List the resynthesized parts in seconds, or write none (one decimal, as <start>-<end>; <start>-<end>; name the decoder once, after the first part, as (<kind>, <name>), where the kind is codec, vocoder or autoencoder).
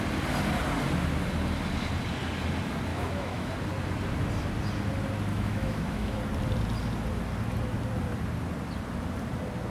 2.9-3.5 (autoencoder, DAC-VAE); 5.3-6.2